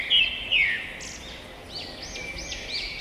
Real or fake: real